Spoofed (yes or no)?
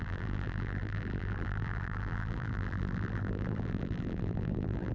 yes